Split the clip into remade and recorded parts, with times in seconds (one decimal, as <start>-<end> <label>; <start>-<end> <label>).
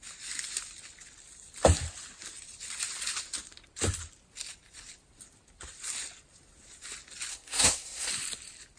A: 0.0-7.3 recorded; 7.3-8.1 remade; 8.1-8.8 recorded